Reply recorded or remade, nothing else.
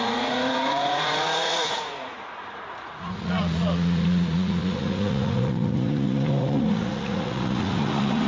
remade